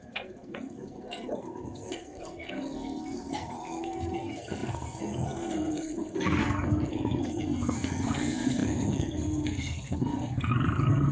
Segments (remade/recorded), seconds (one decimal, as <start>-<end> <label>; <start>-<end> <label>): 0.0-11.1 remade